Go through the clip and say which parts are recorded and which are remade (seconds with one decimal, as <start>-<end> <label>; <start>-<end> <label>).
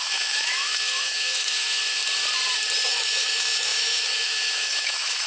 0.0-2.0 remade; 2.0-2.9 recorded; 2.9-5.3 remade